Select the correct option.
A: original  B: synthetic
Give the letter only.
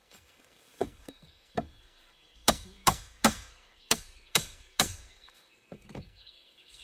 B